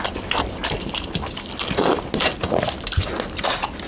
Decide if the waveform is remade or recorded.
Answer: recorded